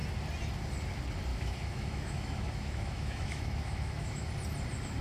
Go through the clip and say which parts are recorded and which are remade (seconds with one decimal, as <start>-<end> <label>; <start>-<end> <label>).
0.0-1.3 recorded; 1.3-4.3 remade; 4.3-5.0 recorded